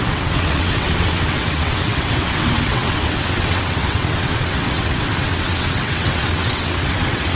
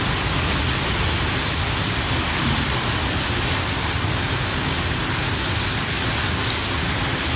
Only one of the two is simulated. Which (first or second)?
first